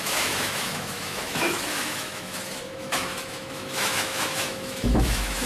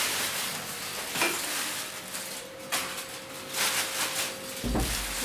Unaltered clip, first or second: second